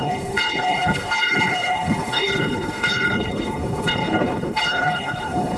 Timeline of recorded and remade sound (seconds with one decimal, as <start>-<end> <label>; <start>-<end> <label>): 0.0-5.6 remade